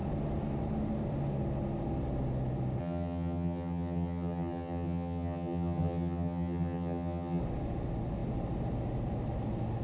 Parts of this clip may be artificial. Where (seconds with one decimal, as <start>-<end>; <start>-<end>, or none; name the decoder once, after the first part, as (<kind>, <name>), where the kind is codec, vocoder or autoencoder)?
2.8-7.4 (vocoder, HiFi-GAN)